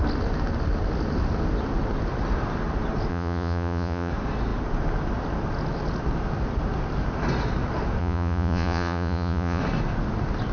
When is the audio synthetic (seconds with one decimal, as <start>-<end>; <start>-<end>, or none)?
3.1-4.1; 8.0-9.6